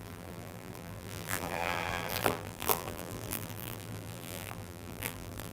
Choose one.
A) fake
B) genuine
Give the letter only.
A